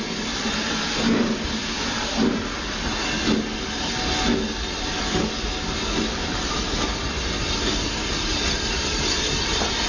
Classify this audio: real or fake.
real